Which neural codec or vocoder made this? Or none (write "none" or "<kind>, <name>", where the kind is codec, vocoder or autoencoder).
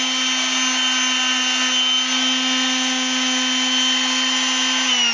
none